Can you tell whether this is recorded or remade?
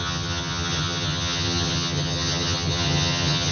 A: remade